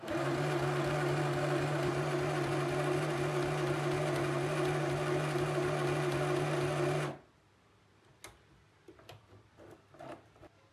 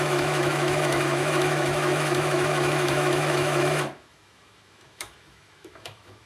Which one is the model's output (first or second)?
second